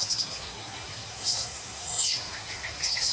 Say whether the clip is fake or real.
fake